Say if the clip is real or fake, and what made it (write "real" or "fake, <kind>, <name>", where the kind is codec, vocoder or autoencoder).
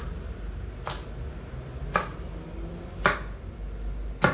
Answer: real